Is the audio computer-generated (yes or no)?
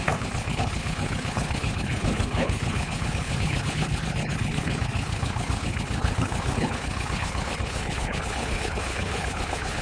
yes